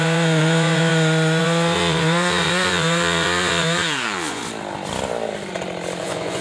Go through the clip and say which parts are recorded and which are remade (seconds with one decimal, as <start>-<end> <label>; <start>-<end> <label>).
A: 0.0-0.9 remade; 0.9-1.4 recorded; 1.4-4.4 remade; 4.4-6.0 recorded; 6.0-6.4 remade